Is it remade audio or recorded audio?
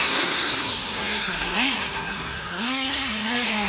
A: remade